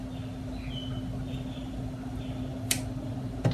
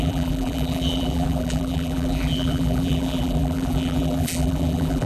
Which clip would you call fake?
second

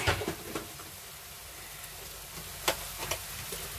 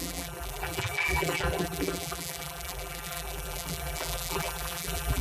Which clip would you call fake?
second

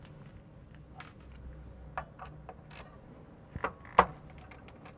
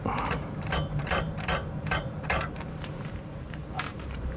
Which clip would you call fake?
second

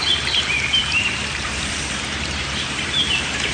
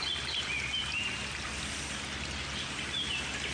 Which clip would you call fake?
first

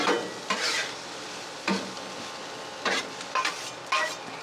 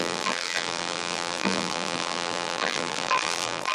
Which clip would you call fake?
second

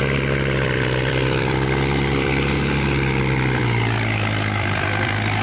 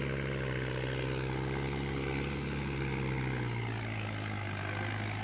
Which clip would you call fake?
first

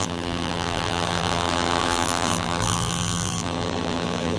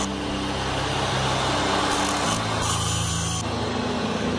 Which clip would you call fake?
first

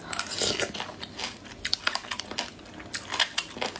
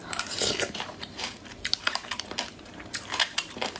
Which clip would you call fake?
second